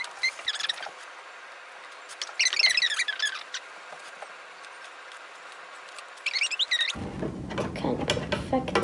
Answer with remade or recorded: recorded